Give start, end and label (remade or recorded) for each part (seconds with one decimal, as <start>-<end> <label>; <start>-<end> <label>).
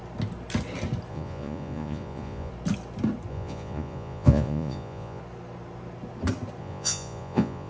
0.0-1.1 recorded; 1.1-2.5 remade; 2.5-3.3 recorded; 3.3-5.2 remade; 5.2-6.6 recorded; 6.6-7.7 remade